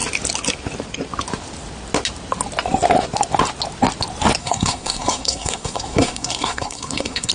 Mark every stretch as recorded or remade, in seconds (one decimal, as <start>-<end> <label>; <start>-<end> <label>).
0.0-4.4 recorded; 4.4-7.3 remade